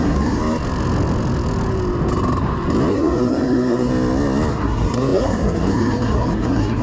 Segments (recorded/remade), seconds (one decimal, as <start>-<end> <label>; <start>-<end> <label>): 0.0-0.4 remade; 0.4-2.9 recorded; 2.9-3.9 remade; 3.9-4.5 recorded; 4.5-6.8 remade